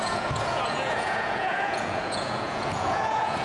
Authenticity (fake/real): fake